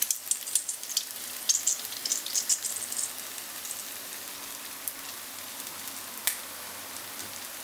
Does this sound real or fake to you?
real